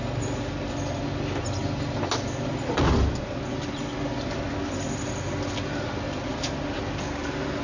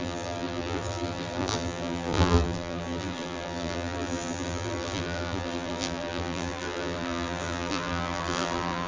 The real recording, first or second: first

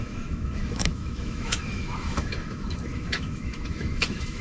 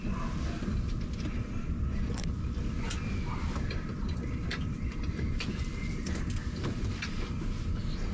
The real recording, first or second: second